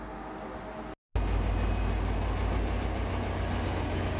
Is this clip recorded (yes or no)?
yes